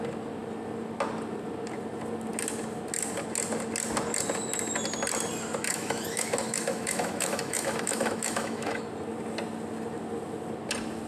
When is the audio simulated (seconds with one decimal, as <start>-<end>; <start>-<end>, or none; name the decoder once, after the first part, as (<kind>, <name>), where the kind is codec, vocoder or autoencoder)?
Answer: 5.7-8.8 (autoencoder, DAC-VAE)